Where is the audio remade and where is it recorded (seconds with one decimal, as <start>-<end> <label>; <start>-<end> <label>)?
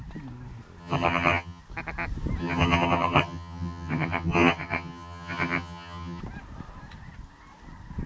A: 0.0-0.8 recorded; 0.8-1.6 remade; 1.6-2.4 recorded; 2.4-6.2 remade; 6.2-8.1 recorded